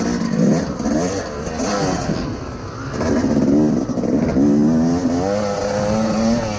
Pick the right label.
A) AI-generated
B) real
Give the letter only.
B